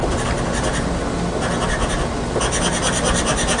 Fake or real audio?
real